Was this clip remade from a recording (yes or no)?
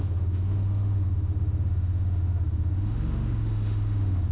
yes